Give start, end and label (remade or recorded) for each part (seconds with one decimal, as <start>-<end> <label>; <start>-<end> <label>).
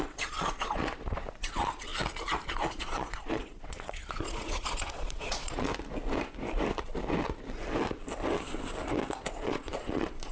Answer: 0.0-1.9 remade; 1.9-2.7 recorded; 2.7-5.7 remade; 5.7-9.3 recorded; 9.3-10.3 remade